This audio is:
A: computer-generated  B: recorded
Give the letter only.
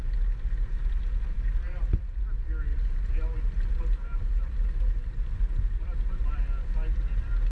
B